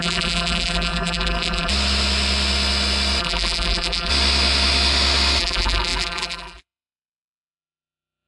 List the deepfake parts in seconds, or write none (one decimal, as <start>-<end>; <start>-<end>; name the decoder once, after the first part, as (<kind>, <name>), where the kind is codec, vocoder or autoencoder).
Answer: 0.0-1.7 (vocoder, BigVGAN v2); 3.2-4.1; 5.4-8.3